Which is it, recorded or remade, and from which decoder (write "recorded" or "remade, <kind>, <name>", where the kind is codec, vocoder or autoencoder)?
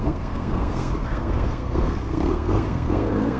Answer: remade, codec, SNAC